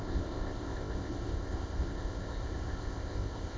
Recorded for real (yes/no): no